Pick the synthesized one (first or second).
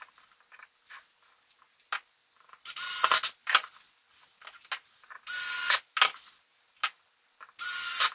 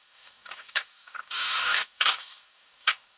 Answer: second